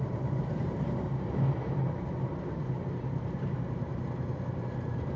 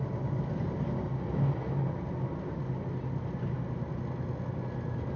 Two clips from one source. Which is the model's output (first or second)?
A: first